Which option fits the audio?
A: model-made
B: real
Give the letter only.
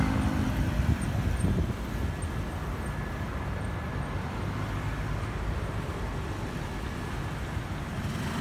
B